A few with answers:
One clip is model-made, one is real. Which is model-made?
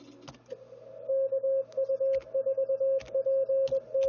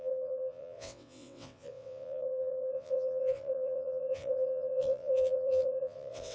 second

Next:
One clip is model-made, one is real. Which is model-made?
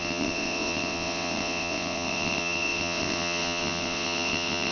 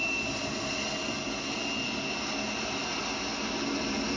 first